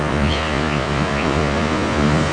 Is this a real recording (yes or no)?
no